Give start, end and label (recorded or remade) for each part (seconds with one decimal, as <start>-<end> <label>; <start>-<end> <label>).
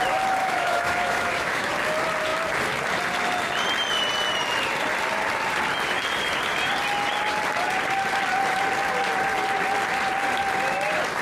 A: 0.0-0.4 recorded; 0.4-1.7 remade; 1.7-11.2 recorded